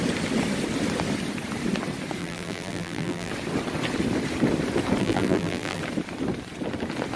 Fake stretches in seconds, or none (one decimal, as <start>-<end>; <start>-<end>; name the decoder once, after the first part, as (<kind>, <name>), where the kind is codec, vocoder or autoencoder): 2.2-3.3 (vocoder, BigVGAN v2); 5.0-5.8